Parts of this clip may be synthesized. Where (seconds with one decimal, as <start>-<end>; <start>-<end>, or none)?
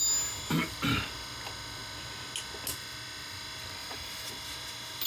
3.8-4.3